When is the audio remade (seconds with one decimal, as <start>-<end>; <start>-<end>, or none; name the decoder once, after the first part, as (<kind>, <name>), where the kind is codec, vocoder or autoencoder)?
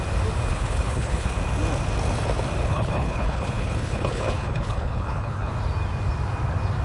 0.5-1.3 (codec, HILCodec); 2.6-5.5